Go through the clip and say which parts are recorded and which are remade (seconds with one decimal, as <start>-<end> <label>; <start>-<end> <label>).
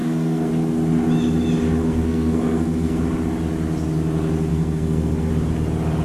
0.0-0.5 remade; 0.5-1.8 recorded; 1.8-3.0 remade; 3.0-4.5 recorded; 4.5-5.3 remade; 5.3-6.0 recorded